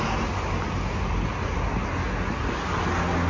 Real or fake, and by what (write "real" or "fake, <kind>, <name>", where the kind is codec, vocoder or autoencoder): real